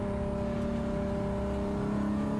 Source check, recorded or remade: recorded